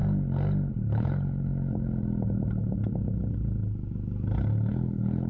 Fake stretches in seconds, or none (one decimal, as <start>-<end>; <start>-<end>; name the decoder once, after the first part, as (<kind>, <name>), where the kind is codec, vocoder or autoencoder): 0.7-1.5 (codec, HILCodec); 4.7-5.3